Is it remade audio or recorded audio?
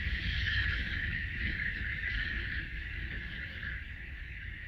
remade